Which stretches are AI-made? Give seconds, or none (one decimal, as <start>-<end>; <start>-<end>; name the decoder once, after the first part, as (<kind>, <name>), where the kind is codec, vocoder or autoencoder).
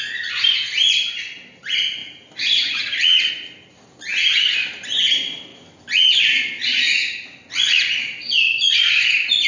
none